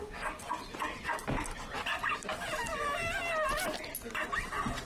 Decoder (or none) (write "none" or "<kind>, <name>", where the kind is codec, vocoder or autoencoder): none